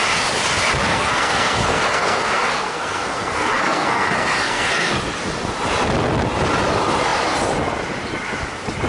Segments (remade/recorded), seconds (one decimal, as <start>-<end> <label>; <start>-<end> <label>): 0.0-0.9 recorded; 0.9-4.9 remade; 4.9-8.9 recorded